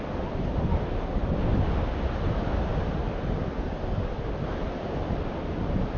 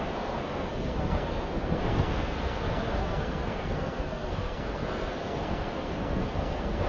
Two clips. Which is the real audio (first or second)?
first